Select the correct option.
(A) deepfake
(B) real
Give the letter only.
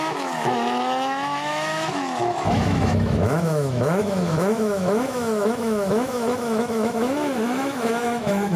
A